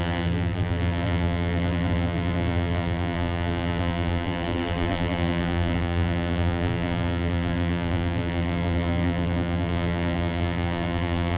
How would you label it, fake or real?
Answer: fake